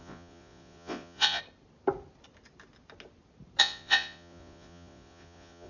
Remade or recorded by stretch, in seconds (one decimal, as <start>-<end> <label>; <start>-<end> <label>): 0.0-1.4 remade; 1.4-3.6 recorded; 3.6-5.7 remade